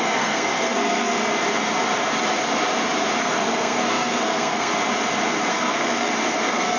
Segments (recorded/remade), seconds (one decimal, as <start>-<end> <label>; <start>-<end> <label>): 0.0-1.3 remade; 1.3-3.2 recorded; 3.2-4.7 remade; 4.7-5.5 recorded; 5.5-6.8 remade